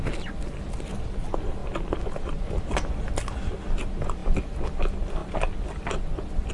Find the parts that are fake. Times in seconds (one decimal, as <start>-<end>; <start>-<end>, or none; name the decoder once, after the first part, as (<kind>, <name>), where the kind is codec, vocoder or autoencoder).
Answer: none